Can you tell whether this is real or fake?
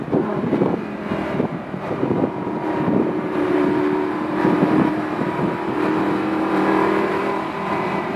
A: fake